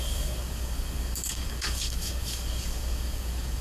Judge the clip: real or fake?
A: fake